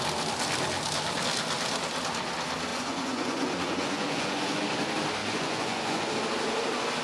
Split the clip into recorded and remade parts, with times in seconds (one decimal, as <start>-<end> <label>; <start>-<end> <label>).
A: 0.0-2.7 recorded; 2.7-4.6 remade; 4.6-5.2 recorded; 5.2-6.1 remade; 6.1-7.0 recorded